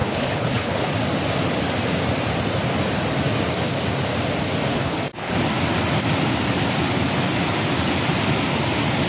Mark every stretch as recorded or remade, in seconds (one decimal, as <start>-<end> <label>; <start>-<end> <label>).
0.0-0.9 remade; 0.9-4.7 recorded; 4.7-5.4 remade; 5.4-9.1 recorded